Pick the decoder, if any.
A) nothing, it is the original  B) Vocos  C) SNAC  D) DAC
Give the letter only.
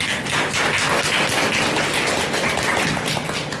A